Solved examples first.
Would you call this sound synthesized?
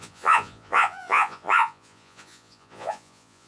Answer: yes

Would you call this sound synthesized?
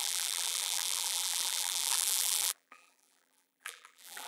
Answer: yes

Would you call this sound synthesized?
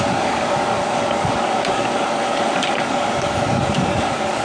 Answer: yes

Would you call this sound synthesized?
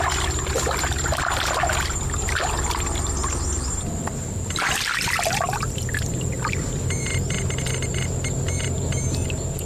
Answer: no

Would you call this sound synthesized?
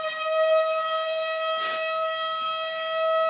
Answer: yes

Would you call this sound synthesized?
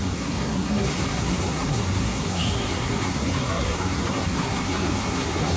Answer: yes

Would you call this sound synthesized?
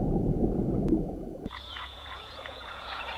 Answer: yes